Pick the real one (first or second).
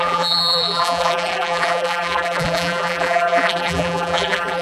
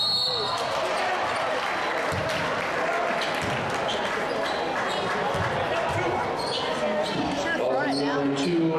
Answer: second